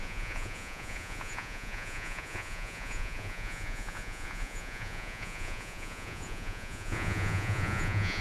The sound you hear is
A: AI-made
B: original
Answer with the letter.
A